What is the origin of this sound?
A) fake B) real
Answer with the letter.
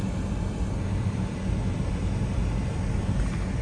B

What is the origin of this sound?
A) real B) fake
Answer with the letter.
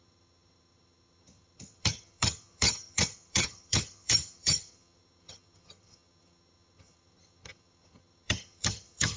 B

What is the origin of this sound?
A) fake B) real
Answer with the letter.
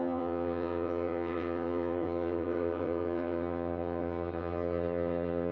A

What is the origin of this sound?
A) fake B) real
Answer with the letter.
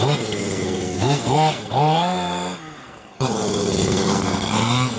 A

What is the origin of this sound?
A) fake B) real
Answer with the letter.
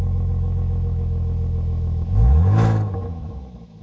A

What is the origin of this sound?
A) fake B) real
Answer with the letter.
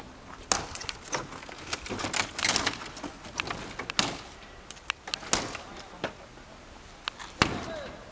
B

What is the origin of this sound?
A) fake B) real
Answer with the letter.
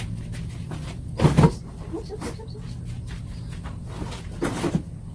B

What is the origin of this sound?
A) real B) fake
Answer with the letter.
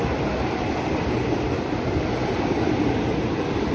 B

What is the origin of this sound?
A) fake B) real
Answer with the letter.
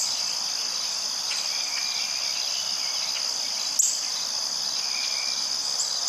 B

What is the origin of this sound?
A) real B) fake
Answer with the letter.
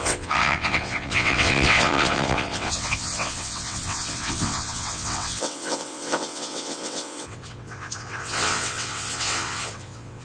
B